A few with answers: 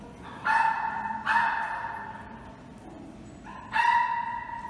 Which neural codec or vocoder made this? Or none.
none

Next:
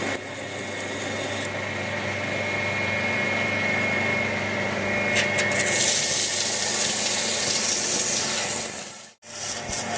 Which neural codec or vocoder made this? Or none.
none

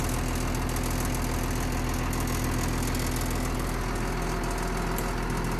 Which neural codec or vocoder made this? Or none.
none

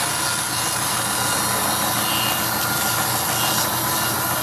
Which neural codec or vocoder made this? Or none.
none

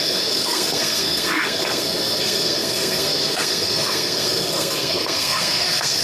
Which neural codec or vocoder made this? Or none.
codec, SNAC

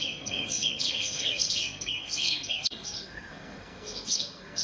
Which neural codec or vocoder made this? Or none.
codec, SNAC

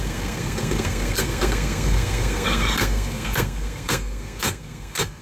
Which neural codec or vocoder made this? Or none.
codec, SNAC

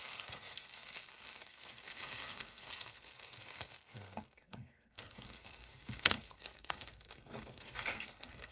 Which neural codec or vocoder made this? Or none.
codec, SNAC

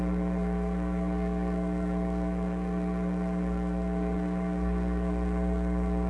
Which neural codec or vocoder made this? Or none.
codec, SNAC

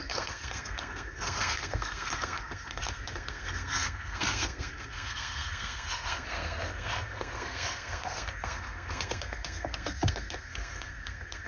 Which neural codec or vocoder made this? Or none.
codec, SNAC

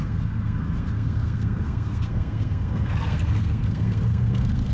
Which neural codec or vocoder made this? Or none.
codec, SNAC